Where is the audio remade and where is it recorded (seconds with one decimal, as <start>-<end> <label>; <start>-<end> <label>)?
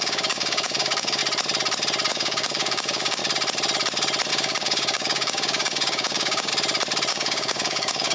0.0-1.2 remade; 1.2-2.1 recorded; 2.1-3.2 remade; 3.2-4.3 recorded; 4.3-6.5 remade; 6.5-7.1 recorded; 7.1-8.1 remade